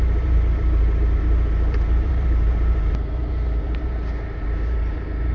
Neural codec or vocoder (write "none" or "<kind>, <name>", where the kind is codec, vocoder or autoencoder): vocoder, BigVGAN v2